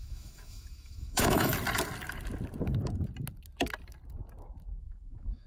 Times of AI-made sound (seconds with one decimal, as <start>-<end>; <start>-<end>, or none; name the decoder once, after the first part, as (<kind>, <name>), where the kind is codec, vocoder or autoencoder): 0.0-1.5 (autoencoder, DAC-VAE); 4.8-5.5